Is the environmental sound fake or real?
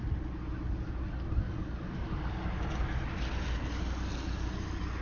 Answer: real